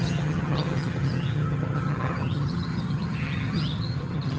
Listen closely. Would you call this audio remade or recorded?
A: remade